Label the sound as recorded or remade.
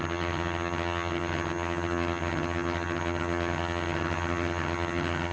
remade